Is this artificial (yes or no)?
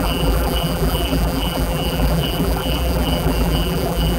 yes